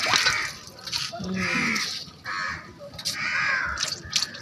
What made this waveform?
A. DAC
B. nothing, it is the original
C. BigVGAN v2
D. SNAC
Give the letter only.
B